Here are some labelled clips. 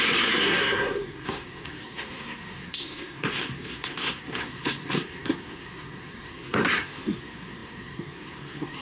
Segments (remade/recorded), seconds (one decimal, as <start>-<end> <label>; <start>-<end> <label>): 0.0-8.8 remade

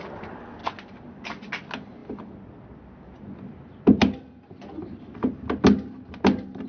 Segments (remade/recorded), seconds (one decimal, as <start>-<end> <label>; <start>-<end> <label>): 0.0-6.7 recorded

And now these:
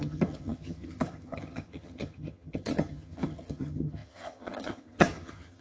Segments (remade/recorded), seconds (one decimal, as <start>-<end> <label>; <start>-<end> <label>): 0.0-5.6 remade

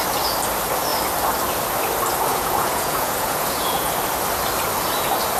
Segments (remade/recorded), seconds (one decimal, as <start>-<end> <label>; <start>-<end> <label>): 0.0-2.3 recorded; 2.3-3.9 remade; 3.9-5.4 recorded

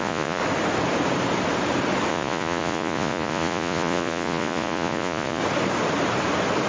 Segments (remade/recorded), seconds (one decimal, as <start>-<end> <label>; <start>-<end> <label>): 0.0-0.4 remade; 0.4-2.1 recorded; 2.1-5.4 remade; 5.4-6.7 recorded